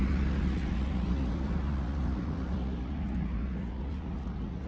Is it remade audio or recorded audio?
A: remade